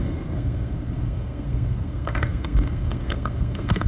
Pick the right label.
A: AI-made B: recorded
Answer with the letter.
A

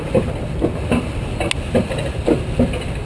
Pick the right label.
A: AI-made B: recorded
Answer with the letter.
B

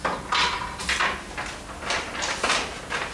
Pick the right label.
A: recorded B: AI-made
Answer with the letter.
A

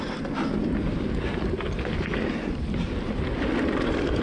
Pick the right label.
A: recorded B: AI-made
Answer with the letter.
A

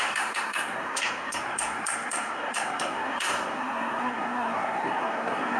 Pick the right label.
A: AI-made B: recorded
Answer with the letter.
A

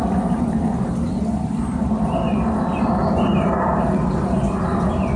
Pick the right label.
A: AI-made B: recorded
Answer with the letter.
B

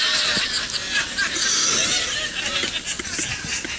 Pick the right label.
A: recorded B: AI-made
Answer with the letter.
A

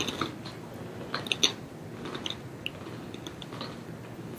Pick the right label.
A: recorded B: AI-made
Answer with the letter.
A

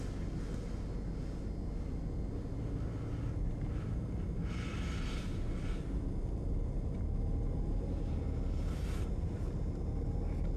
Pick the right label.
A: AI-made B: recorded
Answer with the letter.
B